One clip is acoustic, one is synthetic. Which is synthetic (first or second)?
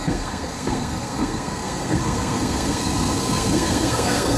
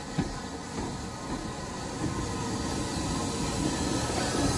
first